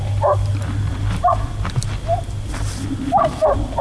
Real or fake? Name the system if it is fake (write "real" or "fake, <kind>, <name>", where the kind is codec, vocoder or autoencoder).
real